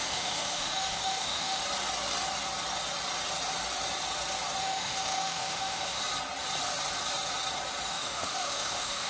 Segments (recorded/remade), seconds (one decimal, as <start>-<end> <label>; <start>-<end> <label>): 0.0-1.6 remade; 1.6-4.6 recorded; 4.6-6.0 remade; 6.0-7.9 recorded; 7.9-9.1 remade